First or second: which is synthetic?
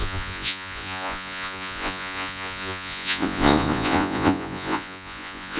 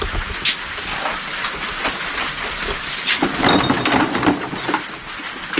first